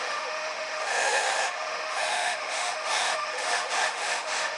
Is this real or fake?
fake